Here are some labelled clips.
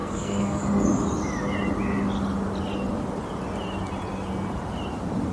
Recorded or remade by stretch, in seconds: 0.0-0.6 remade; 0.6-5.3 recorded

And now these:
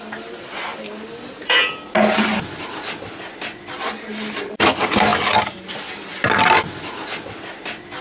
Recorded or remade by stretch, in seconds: 0.0-0.7 recorded; 0.7-1.7 remade; 1.7-8.0 recorded

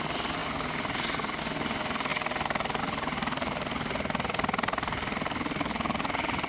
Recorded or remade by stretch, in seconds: 0.0-6.5 recorded

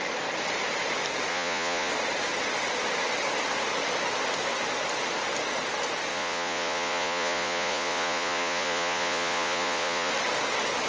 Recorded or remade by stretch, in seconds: 0.0-1.3 recorded; 1.3-1.9 remade; 1.9-6.1 recorded; 6.1-10.1 remade; 10.1-10.9 recorded

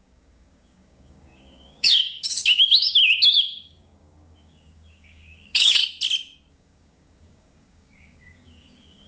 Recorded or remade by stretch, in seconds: 0.0-5.8 remade; 5.8-6.5 recorded; 6.5-9.1 remade

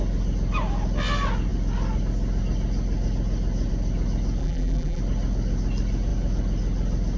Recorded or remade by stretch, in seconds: 0.0-4.4 recorded; 4.4-5.0 remade; 5.0-7.2 recorded